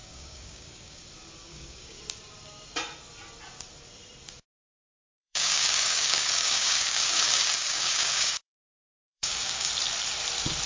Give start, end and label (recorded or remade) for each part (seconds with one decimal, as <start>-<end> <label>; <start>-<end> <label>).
0.0-1.0 remade; 1.0-1.5 recorded; 1.5-2.0 remade; 2.0-5.0 recorded; 5.0-9.7 remade; 9.7-10.7 recorded